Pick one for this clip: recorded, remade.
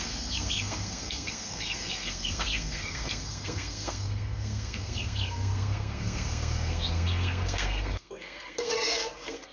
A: remade